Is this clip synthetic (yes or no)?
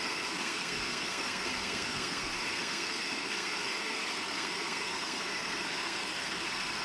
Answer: yes